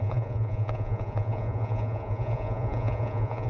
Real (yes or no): no